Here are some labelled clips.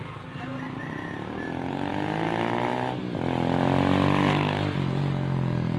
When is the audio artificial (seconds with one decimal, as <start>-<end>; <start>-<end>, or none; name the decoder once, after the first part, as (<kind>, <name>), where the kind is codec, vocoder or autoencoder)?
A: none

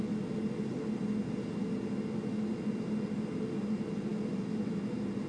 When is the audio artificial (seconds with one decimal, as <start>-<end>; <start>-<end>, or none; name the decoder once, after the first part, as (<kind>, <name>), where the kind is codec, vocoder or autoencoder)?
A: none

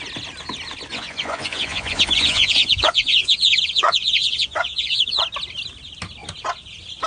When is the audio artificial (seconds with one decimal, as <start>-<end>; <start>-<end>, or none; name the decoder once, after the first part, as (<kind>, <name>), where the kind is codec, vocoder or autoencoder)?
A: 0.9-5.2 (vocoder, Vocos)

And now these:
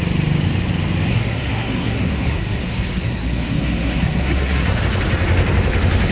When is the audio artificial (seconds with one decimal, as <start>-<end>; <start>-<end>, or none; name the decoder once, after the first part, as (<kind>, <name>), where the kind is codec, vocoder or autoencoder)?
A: 1.1-4.8 (codec, SNAC)

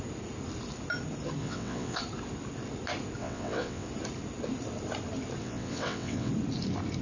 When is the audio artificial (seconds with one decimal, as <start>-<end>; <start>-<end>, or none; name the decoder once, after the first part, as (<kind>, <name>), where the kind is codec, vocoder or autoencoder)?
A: 1.4-2.0 (vocoder, WaveNeXt); 3.2-3.9; 5.4-6.3

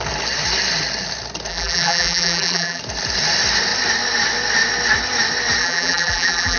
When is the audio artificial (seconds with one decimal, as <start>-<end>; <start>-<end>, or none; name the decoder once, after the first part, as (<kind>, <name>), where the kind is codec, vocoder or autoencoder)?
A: 1.5-2.8 (vocoder, BigVGAN v2); 5.6-6.6